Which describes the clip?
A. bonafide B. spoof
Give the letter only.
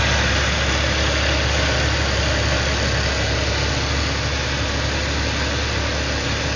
A